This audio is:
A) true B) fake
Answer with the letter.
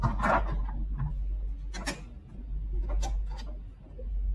A